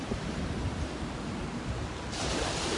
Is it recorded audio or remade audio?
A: remade